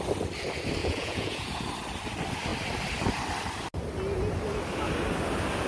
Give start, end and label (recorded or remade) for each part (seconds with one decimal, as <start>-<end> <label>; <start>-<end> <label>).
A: 0.0-0.8 recorded; 0.8-1.7 remade; 1.7-5.7 recorded